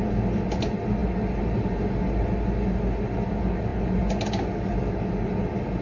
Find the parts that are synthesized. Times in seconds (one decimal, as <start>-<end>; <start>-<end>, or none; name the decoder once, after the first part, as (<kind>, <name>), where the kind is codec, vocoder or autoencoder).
none